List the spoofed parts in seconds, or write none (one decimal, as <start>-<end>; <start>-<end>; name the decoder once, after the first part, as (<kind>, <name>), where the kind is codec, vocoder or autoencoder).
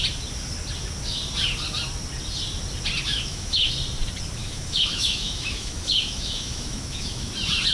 3.1-3.7 (autoencoder, DAC-VAE); 4.4-7.3